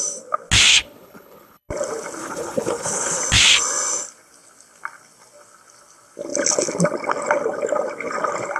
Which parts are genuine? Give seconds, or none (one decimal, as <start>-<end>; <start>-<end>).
0.0-0.7; 1.7-2.2; 3.2-8.6